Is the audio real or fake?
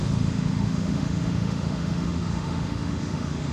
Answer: fake